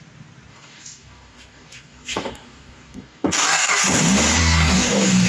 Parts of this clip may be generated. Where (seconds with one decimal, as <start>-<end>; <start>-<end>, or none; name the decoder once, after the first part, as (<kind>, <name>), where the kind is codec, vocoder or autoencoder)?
0.5-3.7 (codec, DAC); 4.4-5.3